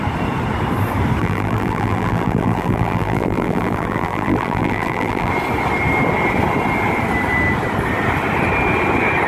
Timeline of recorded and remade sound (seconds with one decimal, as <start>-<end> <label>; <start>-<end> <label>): 0.0-1.2 recorded; 1.2-5.3 remade; 5.3-9.3 recorded